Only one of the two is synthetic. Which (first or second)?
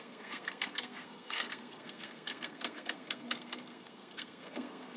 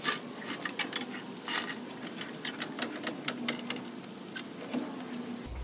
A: first